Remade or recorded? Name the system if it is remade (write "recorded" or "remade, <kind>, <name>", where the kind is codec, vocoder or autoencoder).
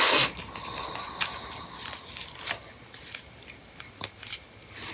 recorded